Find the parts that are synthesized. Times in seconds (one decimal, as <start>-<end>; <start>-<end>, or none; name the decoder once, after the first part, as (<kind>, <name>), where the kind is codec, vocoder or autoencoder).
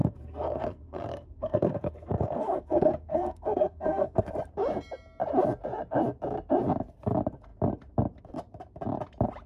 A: 0.0-4.3 (codec, SNAC)